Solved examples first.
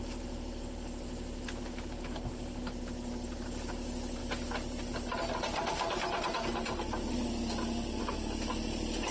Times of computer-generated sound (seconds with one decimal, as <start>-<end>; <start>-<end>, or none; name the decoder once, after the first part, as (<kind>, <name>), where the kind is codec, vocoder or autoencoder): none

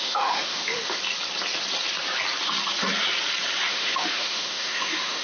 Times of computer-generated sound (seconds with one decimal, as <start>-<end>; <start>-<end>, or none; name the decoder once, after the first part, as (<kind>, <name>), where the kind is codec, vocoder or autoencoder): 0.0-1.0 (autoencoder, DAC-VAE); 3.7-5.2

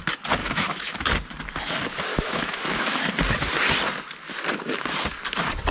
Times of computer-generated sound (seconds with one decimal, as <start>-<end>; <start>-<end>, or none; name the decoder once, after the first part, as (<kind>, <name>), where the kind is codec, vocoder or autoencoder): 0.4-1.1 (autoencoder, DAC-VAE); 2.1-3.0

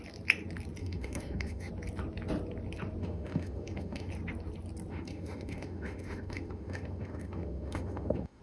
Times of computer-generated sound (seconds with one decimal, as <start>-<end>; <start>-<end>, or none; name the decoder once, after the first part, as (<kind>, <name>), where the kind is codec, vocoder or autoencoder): 0.8-1.7 (autoencoder, DAC-VAE); 3.0-4.1; 4.9-8.4

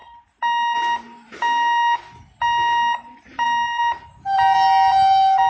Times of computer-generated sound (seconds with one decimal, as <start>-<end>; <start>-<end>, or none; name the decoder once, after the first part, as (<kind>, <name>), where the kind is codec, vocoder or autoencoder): none

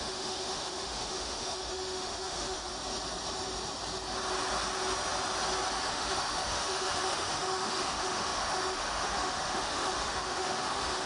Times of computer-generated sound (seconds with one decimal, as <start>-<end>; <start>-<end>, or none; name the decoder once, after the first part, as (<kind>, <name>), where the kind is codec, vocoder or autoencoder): 0.0-2.7 (autoencoder, DAC-VAE); 5.9-11.1

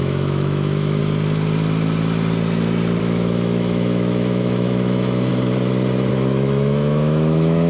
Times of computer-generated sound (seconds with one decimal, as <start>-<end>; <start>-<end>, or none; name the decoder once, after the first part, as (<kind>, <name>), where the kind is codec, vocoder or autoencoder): 0.0-1.0 (autoencoder, DAC-VAE); 3.0-5.3; 6.1-7.7